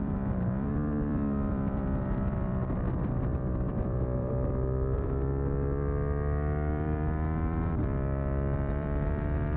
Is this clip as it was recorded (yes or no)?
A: no